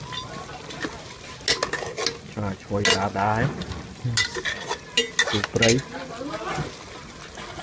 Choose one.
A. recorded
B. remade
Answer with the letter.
A